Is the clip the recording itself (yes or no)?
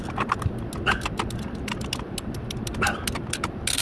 yes